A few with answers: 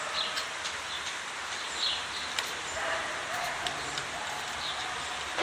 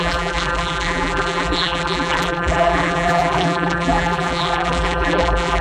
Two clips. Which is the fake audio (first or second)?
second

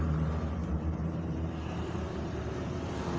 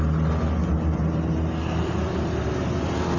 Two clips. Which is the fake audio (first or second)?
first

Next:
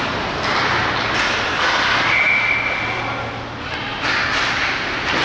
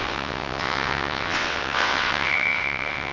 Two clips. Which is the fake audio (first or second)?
second